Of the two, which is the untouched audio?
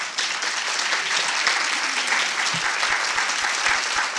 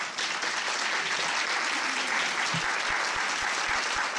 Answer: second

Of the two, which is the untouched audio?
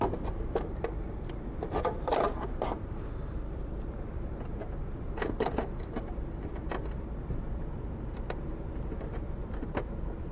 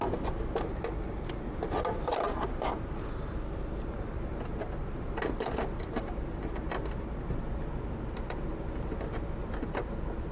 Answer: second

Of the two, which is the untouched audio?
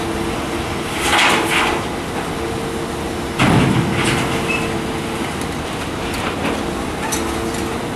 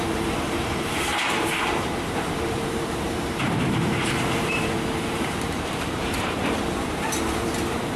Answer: first